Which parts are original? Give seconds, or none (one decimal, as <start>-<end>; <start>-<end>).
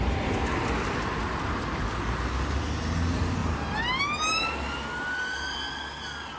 0.0-3.4; 4.0-6.4